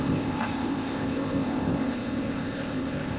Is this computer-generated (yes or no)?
yes